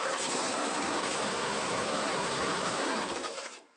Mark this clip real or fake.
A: fake